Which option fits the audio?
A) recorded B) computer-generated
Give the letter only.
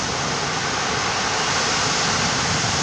A